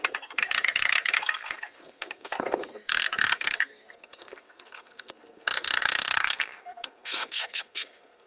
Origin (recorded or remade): remade